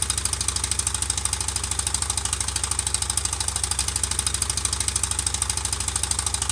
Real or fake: real